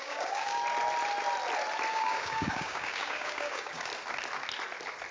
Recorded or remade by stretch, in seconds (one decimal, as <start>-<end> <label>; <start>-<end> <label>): 0.0-0.6 remade; 0.6-1.9 recorded; 1.9-3.9 remade; 3.9-5.1 recorded